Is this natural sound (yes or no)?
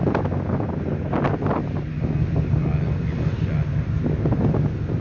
yes